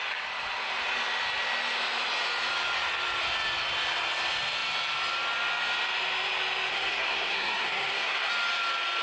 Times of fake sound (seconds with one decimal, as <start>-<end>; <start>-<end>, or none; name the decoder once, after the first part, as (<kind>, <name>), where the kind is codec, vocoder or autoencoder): 6.7-8.3 (codec, SNAC)